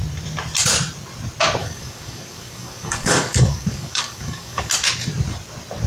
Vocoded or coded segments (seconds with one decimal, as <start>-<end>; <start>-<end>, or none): 1.6-4.7